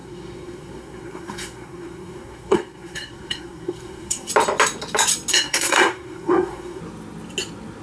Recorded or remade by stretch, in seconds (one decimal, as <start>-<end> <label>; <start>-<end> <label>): 0.0-4.3 remade; 4.3-5.3 recorded; 5.3-6.8 remade; 6.8-7.8 recorded